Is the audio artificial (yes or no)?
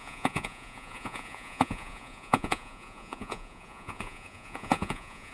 yes